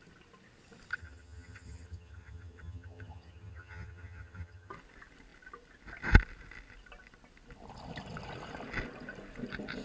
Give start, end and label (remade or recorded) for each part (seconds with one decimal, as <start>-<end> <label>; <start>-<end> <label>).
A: 0.0-1.0 recorded; 1.0-4.7 remade; 4.7-9.8 recorded